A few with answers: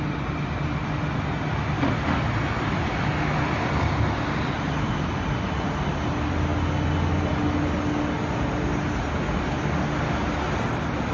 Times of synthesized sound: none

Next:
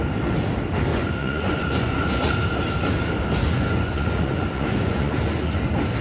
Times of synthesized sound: 0.9-2.3 (vocoder, Vocos); 3.4-5.6

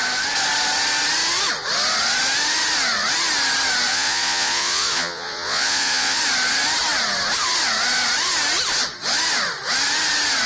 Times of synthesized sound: 3.9-6.2 (vocoder, Vocos)

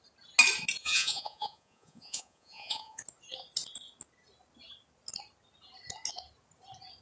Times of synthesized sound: 0.8-3.0 (vocoder, Vocos)